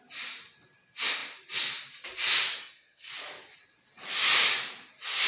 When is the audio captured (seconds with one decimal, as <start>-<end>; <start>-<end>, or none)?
0.0-2.5; 3.1-5.3